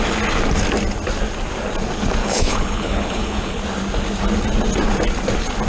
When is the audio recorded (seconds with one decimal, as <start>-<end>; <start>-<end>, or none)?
0.0-2.2; 3.6-5.7